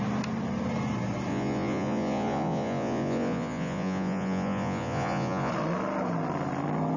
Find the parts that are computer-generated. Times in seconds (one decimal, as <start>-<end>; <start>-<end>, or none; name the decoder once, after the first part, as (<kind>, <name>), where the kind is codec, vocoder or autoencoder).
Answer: 1.3-5.5 (vocoder, Vocos)

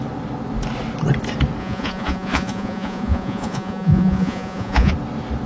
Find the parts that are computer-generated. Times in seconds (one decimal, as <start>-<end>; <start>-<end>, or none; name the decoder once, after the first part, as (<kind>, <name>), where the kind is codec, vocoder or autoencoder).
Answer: 1.6-4.9 (vocoder, Vocos)

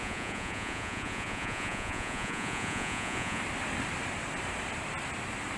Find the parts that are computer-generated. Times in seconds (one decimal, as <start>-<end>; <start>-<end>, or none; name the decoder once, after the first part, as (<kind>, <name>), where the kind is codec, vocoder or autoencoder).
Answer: 0.0-3.4 (vocoder, Vocos)